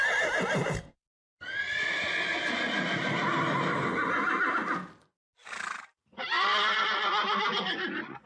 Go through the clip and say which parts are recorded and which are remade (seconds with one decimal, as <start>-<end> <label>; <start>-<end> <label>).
0.0-8.3 recorded